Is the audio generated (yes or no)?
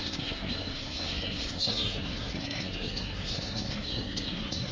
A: yes